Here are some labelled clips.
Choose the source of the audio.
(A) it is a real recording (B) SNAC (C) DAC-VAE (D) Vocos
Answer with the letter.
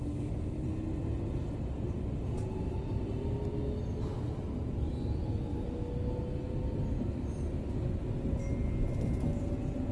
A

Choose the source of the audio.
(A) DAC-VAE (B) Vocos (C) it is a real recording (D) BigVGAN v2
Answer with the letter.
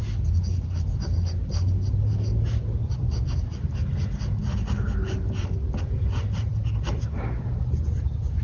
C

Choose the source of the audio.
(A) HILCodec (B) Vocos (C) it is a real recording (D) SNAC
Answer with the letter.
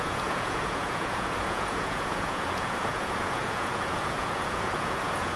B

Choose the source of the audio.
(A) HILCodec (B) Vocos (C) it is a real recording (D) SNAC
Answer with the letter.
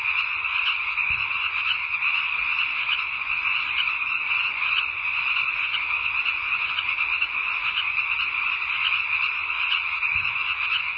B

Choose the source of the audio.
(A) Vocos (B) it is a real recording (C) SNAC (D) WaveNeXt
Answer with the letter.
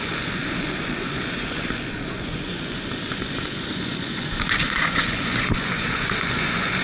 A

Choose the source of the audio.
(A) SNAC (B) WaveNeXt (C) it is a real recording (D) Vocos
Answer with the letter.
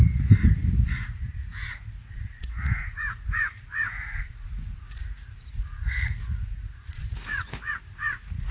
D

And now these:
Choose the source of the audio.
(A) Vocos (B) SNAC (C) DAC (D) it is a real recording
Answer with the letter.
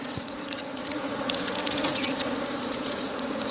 A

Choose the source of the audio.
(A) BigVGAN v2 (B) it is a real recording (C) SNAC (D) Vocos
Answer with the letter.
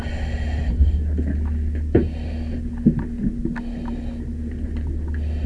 B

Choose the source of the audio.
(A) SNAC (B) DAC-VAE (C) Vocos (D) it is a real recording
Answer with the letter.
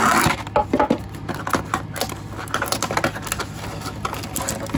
D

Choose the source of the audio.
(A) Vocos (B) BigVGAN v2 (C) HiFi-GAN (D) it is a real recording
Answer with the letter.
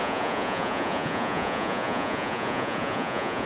A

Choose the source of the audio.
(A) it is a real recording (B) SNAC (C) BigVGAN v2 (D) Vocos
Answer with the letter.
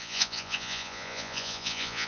D